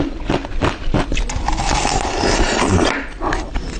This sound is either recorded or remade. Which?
recorded